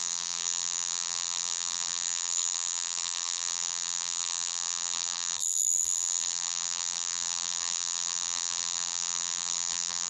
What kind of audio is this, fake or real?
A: fake